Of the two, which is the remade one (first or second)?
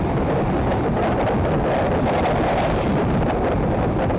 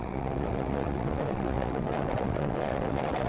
second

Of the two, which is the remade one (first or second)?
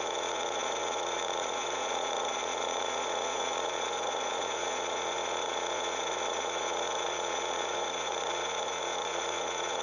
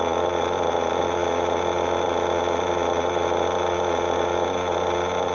first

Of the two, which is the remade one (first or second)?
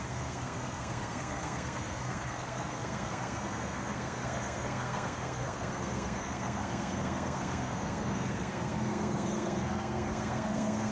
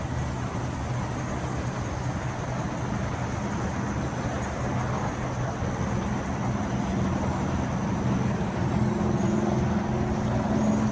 first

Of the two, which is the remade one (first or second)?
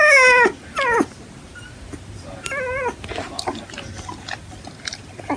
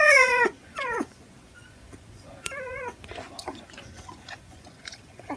second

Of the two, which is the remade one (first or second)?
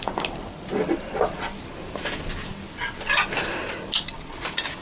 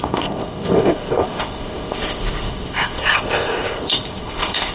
second